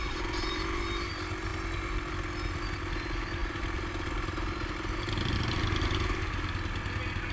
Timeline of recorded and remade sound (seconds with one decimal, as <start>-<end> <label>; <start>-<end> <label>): 0.0-0.8 remade; 0.8-3.4 recorded; 3.4-5.6 remade; 5.6-7.3 recorded